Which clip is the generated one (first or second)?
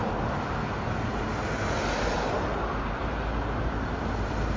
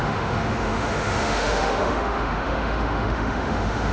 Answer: second